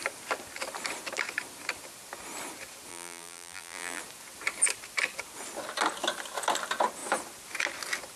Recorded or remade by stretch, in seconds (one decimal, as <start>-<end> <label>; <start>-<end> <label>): 0.0-2.9 recorded; 2.9-4.0 remade; 4.0-8.2 recorded